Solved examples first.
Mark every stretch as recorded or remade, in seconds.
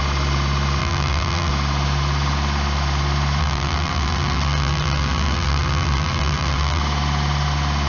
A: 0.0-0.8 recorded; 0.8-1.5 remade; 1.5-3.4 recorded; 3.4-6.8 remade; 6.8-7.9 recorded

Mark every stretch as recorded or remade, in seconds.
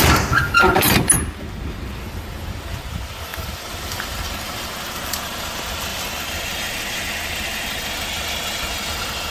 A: 0.0-3.3 recorded; 3.3-5.4 remade; 5.4-5.9 recorded; 5.9-7.0 remade; 7.0-9.3 recorded